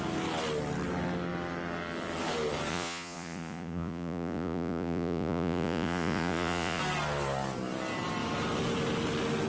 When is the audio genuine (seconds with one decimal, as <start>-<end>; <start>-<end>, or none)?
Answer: 0.0-2.7; 6.8-9.5